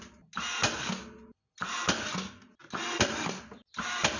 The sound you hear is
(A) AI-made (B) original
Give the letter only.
B